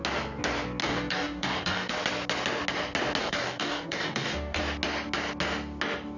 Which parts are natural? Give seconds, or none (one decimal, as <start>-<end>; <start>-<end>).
0.0-0.8; 1.9-3.2; 4.6-6.2